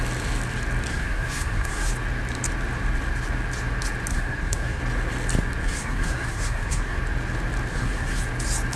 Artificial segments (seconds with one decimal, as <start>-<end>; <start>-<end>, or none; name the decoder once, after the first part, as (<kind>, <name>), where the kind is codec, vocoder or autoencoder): 0.9-1.9 (codec, SNAC); 4.1-4.8; 5.6-7.0; 7.7-8.2